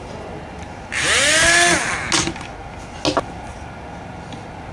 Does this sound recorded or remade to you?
recorded